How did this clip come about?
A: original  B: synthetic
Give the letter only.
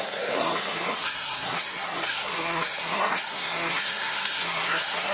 B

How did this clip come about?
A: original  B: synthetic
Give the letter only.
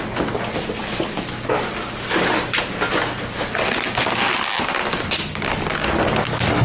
A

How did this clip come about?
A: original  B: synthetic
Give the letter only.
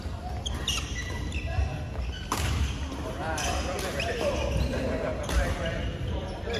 A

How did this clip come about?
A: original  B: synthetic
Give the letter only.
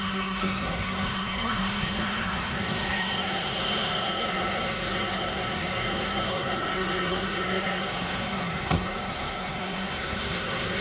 B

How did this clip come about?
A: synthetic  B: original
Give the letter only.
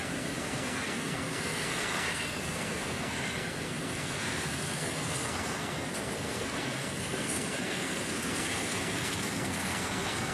A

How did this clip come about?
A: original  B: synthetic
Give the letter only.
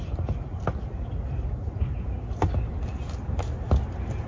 A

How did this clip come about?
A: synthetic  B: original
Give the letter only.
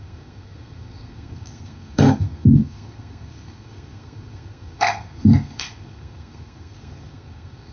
A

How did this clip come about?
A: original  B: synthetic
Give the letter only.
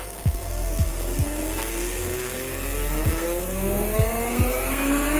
B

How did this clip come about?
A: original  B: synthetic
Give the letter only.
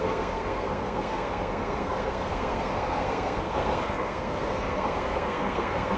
B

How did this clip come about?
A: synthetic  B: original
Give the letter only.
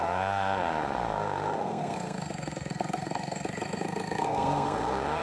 A